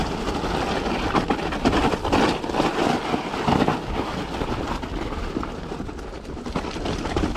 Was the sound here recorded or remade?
recorded